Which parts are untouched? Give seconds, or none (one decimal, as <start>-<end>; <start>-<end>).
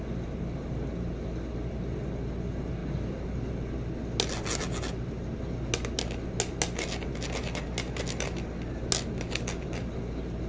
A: 0.0-10.5